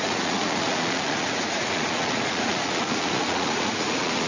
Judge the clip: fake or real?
fake